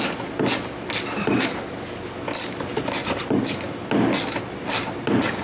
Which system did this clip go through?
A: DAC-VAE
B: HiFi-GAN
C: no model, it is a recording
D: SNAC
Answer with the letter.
C